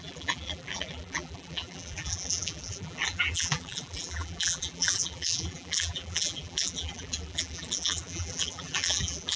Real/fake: fake